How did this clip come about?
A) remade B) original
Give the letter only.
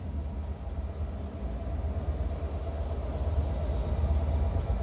B